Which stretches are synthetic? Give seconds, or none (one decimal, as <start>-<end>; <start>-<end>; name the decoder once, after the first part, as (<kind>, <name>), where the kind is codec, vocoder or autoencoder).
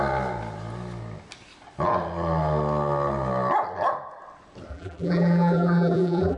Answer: 4.7-6.4 (vocoder, BigVGAN v2)